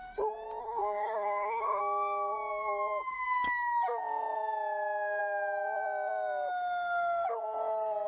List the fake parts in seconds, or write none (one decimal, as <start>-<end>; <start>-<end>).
0.6-1.8